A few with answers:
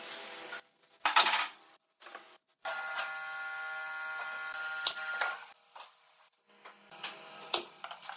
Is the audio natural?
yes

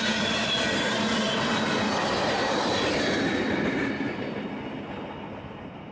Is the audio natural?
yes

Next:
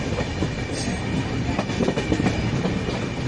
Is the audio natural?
yes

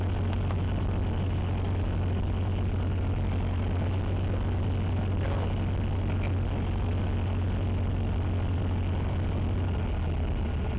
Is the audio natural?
yes